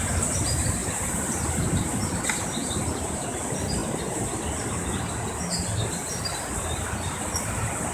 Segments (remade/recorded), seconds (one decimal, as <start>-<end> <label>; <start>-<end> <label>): 0.0-0.8 recorded; 0.8-2.2 remade; 2.2-2.6 recorded; 2.6-3.3 remade; 3.3-7.9 recorded